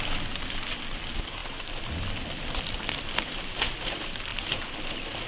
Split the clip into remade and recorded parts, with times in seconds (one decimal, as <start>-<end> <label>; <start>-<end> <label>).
0.0-1.4 recorded; 1.4-3.3 remade; 3.3-5.3 recorded